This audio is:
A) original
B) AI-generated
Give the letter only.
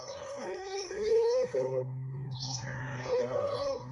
B